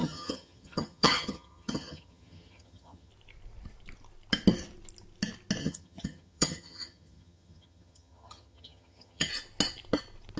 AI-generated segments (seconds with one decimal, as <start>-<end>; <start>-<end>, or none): 0.0-3.1; 5.6-9.3